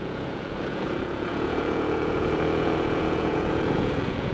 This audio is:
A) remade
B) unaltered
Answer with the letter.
A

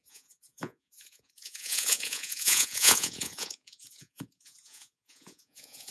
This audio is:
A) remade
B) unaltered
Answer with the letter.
A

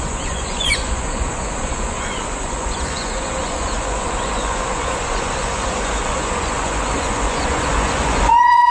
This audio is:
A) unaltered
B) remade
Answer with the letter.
B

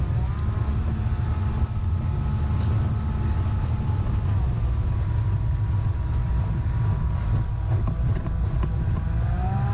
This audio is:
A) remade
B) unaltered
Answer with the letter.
B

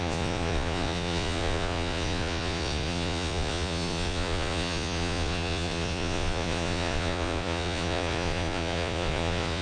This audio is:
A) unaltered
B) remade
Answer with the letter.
B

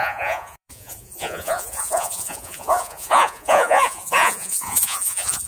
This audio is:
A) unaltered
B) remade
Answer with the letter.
B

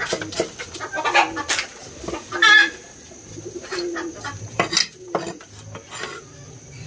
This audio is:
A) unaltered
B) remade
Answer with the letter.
A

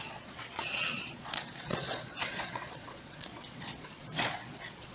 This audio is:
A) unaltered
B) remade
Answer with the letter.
B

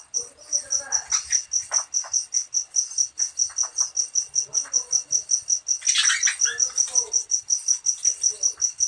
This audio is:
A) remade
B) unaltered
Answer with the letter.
B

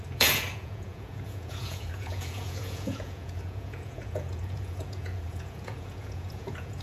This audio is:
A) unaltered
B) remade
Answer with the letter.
B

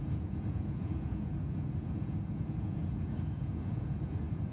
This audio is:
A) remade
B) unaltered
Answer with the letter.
A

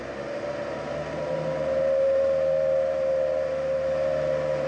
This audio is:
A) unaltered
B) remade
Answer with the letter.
A